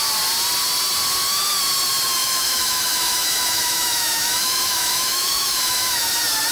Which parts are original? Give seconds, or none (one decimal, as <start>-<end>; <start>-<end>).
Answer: 0.0-2.2; 6.1-6.5